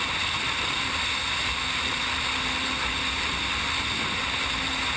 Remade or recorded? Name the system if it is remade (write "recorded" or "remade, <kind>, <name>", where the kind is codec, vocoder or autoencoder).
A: recorded